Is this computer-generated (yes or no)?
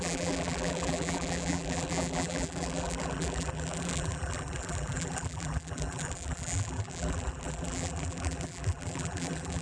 yes